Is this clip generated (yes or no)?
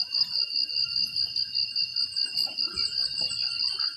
no